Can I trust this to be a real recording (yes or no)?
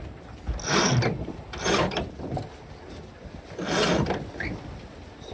yes